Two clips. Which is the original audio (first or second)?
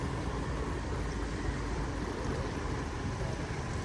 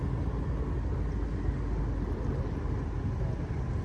second